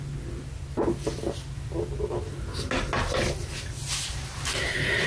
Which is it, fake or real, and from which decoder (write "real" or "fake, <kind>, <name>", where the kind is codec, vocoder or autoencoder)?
real